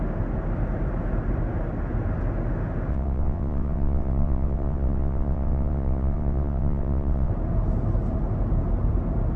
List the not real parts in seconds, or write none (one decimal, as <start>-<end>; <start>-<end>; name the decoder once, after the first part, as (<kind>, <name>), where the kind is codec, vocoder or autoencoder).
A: 2.9-7.3 (vocoder, WaveNeXt)